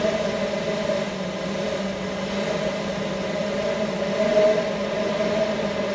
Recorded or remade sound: recorded